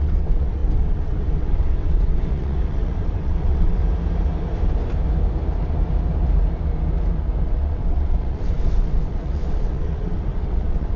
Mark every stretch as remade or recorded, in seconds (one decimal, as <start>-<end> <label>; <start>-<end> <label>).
0.0-3.8 remade; 3.8-7.4 recorded; 7.4-11.0 remade